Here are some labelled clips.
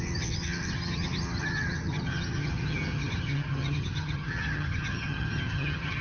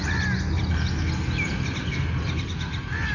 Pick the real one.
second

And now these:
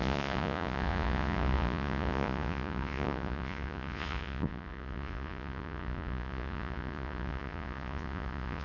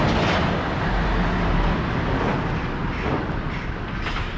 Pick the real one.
second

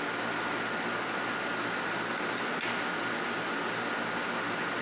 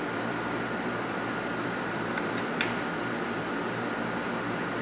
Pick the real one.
first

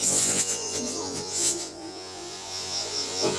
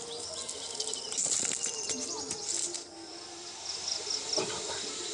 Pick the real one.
second